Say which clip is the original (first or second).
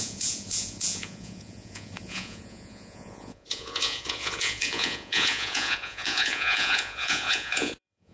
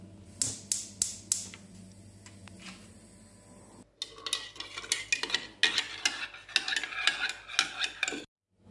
second